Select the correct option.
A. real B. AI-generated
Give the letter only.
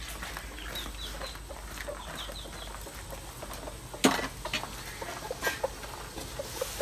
A